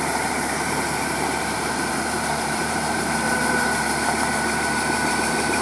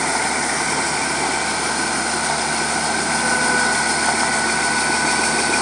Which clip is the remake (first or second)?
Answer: first